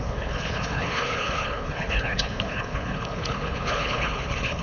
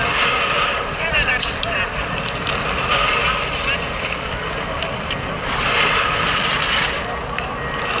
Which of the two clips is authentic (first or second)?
second